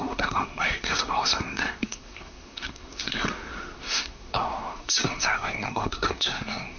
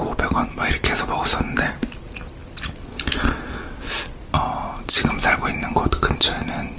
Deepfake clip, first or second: first